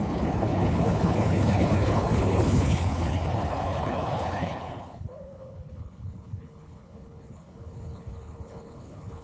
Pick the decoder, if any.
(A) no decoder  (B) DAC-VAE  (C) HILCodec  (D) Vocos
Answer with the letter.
C